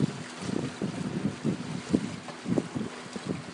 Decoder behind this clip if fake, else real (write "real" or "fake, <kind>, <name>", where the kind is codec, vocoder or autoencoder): real